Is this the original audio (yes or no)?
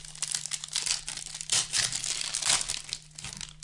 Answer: yes